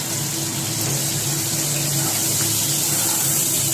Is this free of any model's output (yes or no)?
yes